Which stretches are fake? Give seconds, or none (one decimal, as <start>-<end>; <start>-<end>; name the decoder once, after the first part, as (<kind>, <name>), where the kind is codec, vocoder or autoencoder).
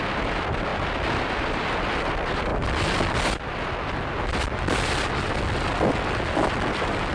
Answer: none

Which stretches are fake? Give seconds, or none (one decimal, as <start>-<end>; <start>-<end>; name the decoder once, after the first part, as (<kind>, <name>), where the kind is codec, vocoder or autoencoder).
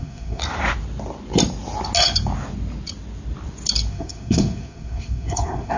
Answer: 0.0-0.4 (codec, SNAC); 3.9-5.8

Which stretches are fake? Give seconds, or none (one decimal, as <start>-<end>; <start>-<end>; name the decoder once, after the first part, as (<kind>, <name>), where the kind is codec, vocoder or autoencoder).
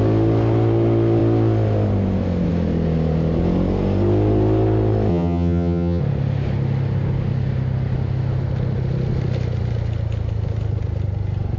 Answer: 5.1-6.0 (vocoder, HiFi-GAN)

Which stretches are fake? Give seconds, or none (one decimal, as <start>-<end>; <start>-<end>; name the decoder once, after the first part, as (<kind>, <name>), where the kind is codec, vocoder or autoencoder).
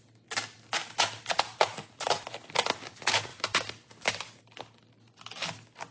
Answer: none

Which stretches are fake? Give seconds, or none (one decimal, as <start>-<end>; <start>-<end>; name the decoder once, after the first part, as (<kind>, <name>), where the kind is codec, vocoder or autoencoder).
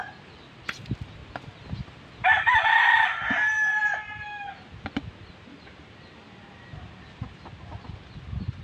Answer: none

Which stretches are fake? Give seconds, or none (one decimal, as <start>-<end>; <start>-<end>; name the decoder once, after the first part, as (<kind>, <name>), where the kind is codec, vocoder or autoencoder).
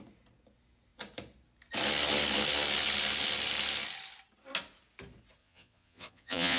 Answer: 5.4-6.6 (vocoder, Vocos)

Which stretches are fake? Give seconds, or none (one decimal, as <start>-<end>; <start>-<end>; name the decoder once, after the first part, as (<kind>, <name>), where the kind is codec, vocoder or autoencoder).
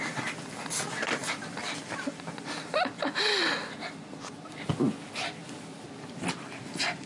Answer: 1.2-4.7 (vocoder, BigVGAN v2)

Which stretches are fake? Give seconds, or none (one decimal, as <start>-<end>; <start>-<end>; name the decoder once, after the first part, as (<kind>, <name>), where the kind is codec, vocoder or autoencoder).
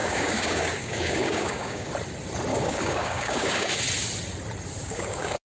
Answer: 0.0-1.9 (codec, DAC); 2.5-3.8; 4.8-5.6